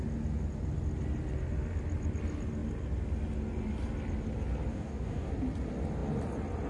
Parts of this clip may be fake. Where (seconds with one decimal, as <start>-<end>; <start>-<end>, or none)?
4.7-5.3